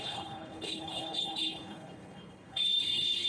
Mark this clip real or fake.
fake